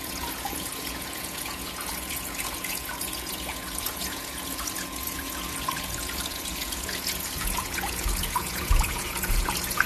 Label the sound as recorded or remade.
remade